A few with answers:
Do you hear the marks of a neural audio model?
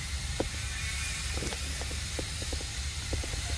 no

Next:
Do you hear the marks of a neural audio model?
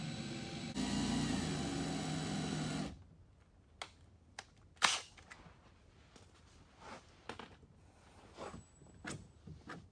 no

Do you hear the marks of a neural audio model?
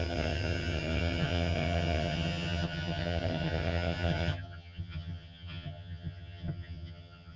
yes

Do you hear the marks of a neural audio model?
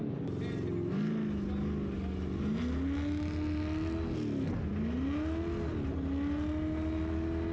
no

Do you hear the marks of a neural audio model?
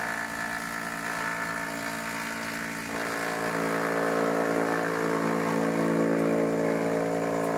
no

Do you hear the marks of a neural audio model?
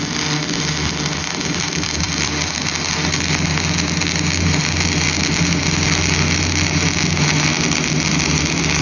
no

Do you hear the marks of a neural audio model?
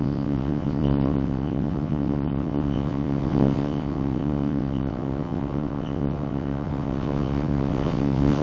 yes